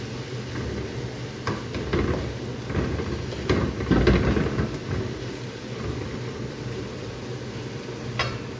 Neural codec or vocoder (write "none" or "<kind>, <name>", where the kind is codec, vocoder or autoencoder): none